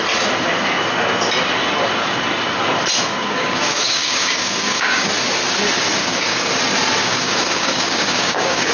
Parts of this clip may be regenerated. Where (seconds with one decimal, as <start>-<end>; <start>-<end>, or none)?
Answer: 3.2-5.1; 6.0-6.5; 7.0-8.7